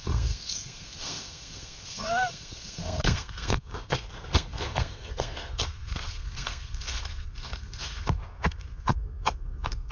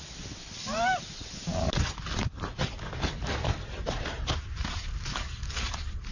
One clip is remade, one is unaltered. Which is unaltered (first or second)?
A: second